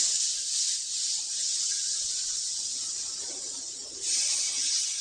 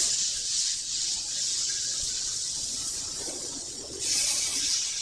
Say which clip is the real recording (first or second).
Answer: first